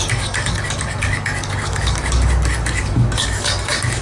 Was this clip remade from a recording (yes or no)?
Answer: yes